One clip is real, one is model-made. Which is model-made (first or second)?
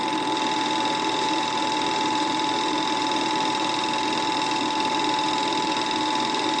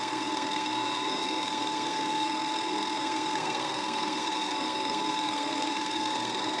second